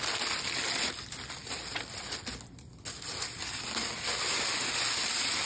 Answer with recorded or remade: recorded